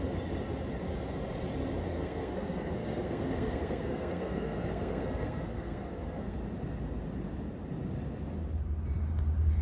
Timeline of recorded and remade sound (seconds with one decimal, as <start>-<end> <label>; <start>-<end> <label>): 0.0-1.9 recorded; 1.9-6.4 remade; 6.4-9.6 recorded